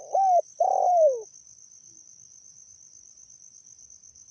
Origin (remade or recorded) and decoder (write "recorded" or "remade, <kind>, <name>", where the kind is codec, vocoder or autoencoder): remade, vocoder, BigVGAN v2